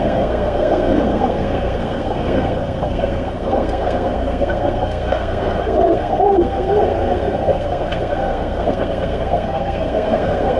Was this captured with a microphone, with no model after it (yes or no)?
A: no